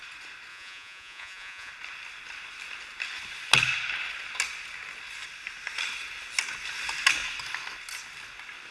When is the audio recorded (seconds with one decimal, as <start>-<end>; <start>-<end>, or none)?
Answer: 0.0-0.5; 1.7-8.7